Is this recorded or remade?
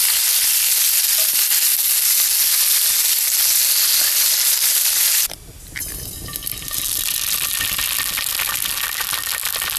recorded